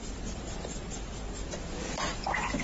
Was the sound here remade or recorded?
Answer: remade